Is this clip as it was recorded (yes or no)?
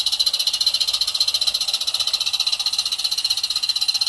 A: yes